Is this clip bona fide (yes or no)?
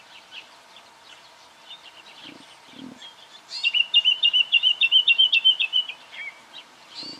no